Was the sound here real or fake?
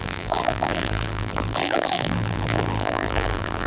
fake